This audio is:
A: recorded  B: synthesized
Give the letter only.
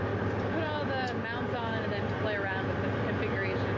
A